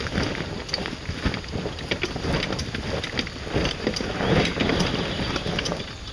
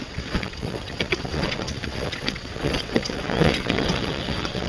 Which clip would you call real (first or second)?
first